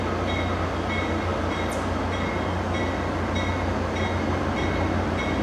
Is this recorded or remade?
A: recorded